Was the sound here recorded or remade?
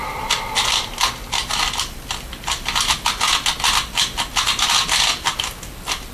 recorded